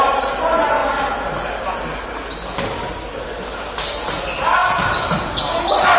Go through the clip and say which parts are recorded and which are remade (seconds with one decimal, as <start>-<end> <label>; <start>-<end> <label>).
0.0-6.0 recorded